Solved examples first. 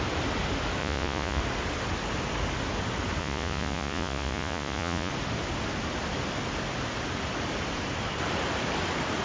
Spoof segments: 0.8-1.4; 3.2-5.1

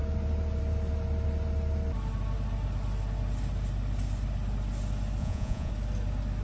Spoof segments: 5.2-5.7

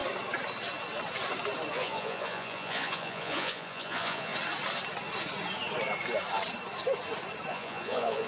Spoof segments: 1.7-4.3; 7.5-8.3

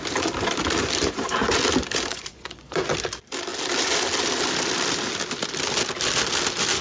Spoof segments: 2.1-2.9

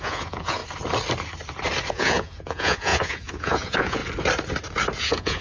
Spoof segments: 0.0-0.6; 1.9-4.0; 5.0-5.4